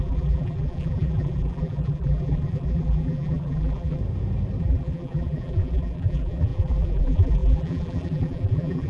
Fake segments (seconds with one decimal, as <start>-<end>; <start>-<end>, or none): 0.0-4.0; 4.6-8.9